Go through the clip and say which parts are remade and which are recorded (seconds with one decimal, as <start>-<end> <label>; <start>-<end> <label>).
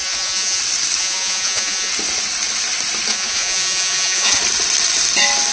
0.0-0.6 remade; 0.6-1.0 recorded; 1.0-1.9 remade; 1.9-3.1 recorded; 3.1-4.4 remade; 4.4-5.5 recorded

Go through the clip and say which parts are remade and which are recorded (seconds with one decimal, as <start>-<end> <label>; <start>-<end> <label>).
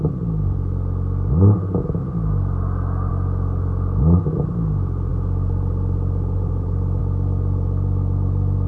0.0-5.1 recorded; 5.1-7.0 remade; 7.0-8.7 recorded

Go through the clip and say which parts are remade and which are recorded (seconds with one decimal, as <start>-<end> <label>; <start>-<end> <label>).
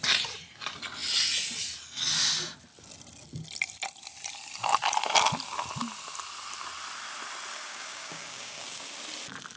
0.0-7.5 recorded; 7.5-8.8 remade; 8.8-9.6 recorded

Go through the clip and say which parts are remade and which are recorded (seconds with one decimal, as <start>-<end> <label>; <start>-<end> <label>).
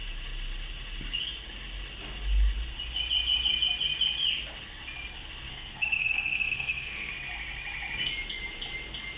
0.0-5.5 recorded; 5.5-7.1 remade; 7.1-9.2 recorded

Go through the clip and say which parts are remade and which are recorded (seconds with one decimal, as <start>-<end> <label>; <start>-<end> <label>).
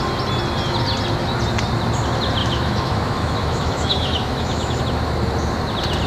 0.0-2.4 recorded; 2.4-4.8 remade; 4.8-6.1 recorded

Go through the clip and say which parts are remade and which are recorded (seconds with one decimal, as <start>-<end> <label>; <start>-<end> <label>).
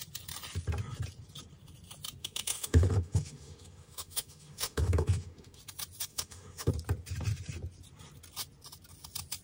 0.0-2.2 recorded; 2.2-5.6 remade; 5.6-6.1 recorded; 6.1-6.7 remade; 6.7-9.4 recorded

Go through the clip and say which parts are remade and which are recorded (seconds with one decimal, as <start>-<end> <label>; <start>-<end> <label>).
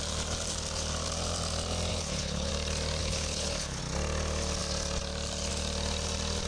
0.0-1.9 recorded; 1.9-2.5 remade; 2.5-3.0 recorded; 3.0-3.8 remade; 3.8-6.5 recorded